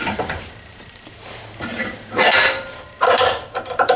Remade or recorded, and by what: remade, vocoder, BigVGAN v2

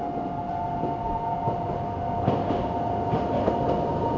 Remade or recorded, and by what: recorded